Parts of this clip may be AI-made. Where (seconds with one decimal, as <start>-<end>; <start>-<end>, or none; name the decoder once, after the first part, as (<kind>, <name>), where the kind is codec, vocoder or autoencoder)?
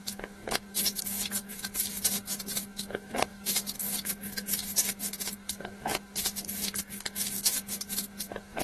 0.0-8.6 (codec, DAC)